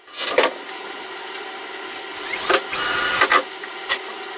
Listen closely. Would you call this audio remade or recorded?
recorded